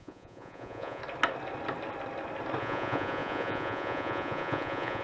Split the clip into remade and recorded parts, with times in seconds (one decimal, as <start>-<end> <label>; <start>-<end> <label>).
0.0-1.0 remade; 1.0-2.6 recorded; 2.6-5.0 remade